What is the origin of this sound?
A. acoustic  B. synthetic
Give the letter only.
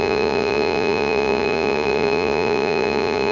B